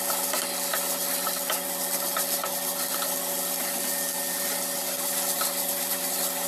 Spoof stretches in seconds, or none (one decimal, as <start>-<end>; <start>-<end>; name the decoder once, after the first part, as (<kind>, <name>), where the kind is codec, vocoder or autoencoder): none